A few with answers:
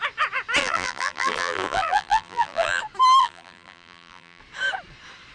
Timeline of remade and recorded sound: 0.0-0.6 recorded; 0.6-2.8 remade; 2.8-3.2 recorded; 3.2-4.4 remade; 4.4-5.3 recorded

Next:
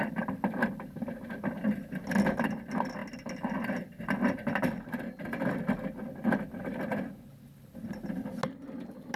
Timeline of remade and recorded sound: 0.0-9.2 recorded

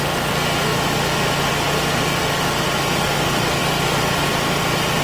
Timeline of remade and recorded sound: 0.0-0.7 recorded; 0.7-1.6 remade; 1.6-5.0 recorded

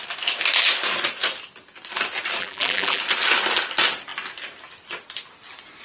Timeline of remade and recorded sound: 0.0-2.4 recorded; 2.4-3.0 remade; 3.0-5.8 recorded